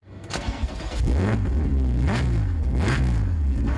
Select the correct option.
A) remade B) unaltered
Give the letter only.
A